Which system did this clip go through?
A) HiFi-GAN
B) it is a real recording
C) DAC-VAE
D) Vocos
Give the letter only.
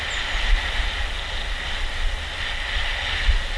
B